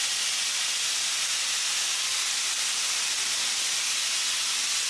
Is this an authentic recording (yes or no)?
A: yes